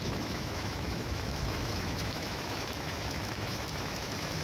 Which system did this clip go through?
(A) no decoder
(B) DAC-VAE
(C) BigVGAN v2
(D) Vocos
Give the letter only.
B